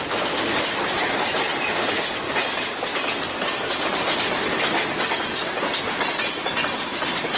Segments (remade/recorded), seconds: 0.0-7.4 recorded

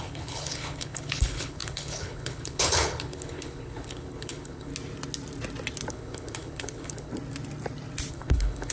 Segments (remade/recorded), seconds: 0.0-4.7 remade; 4.7-5.9 recorded; 5.9-7.1 remade; 7.1-8.1 recorded; 8.1-8.7 remade

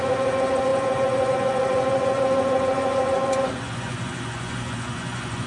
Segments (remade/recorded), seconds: 0.0-5.5 remade

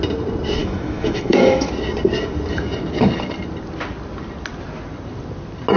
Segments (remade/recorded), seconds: 0.0-0.6 recorded; 0.6-1.7 remade; 1.7-5.8 recorded

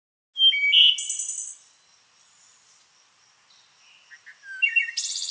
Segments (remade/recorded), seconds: 0.0-5.3 recorded

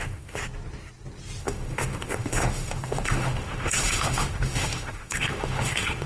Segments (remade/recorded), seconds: 0.0-0.4 remade; 0.4-1.4 recorded; 1.4-6.1 remade

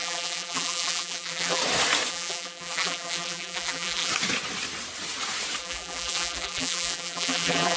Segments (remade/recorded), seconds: 0.0-1.6 remade; 1.6-2.1 recorded; 2.1-4.1 remade; 4.1-5.6 recorded; 5.6-7.8 remade

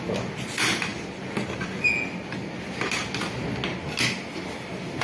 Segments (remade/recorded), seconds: 0.0-5.0 recorded